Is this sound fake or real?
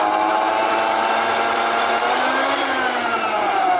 real